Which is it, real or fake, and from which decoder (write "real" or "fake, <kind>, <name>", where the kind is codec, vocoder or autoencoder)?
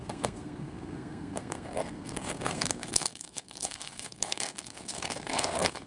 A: fake, codec, SNAC